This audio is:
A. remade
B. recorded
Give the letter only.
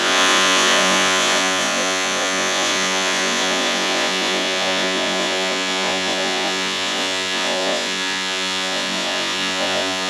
A